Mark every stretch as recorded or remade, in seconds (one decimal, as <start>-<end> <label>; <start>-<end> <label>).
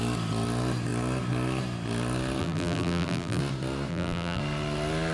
0.0-2.4 recorded; 2.4-3.4 remade; 3.4-3.9 recorded; 3.9-4.4 remade; 4.4-5.1 recorded